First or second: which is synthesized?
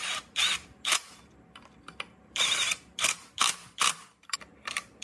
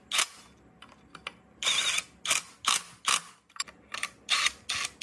first